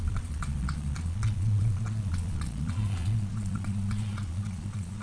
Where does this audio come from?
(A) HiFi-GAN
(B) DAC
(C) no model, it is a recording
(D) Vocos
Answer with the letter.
D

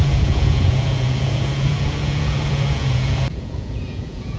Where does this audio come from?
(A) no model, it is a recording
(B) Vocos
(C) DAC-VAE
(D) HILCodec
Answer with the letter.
B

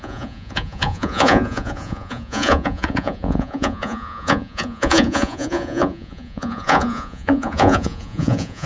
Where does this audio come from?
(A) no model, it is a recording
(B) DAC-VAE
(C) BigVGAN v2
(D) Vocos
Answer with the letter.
D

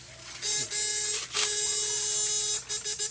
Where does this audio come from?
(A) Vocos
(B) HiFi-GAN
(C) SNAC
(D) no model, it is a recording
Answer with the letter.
D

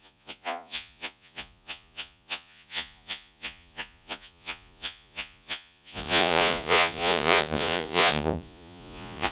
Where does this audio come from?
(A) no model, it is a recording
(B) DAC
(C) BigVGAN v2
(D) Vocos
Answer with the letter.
D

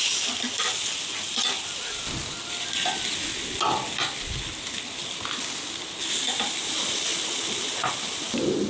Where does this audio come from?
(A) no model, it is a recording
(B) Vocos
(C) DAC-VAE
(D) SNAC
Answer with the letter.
A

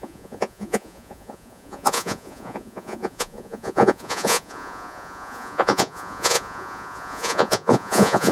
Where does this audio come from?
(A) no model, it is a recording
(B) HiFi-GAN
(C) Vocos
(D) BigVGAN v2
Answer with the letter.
C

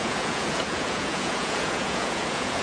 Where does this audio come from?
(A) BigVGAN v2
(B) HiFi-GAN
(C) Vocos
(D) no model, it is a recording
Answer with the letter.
C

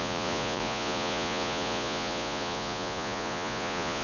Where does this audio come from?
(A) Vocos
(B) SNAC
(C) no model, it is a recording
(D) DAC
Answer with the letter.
A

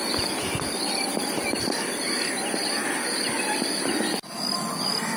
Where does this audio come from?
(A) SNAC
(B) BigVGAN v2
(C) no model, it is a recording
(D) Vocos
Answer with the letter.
C